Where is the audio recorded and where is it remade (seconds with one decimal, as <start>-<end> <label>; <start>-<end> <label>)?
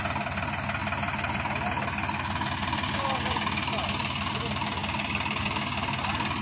0.0-6.4 recorded